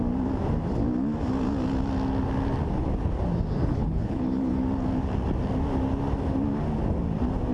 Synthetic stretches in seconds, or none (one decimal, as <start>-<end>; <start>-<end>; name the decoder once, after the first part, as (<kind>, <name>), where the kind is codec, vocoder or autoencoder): 3.6-4.6 (codec, HILCodec)